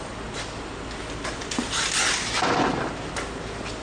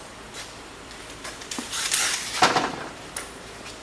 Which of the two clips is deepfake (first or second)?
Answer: second